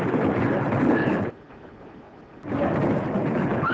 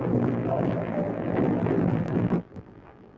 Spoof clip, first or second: second